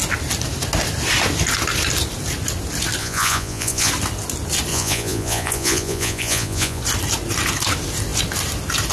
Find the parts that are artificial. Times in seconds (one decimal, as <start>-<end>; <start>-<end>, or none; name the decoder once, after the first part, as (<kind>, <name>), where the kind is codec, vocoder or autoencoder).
3.0-3.9 (vocoder, Vocos); 4.7-6.8